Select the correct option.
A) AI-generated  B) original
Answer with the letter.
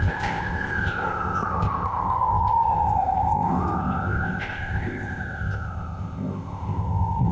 A